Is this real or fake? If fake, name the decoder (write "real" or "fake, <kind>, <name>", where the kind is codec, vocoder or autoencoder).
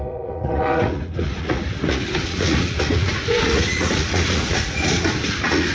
fake, vocoder, Vocos